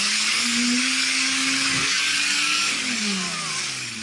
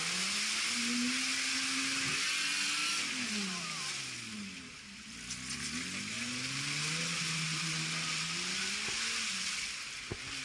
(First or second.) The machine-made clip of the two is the first